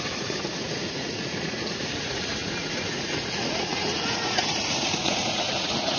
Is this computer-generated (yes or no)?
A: yes